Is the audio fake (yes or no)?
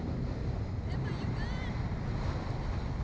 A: no